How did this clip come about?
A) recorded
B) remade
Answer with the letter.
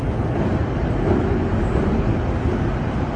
A